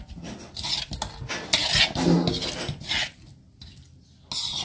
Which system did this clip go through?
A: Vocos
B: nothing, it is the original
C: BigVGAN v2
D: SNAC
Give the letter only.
B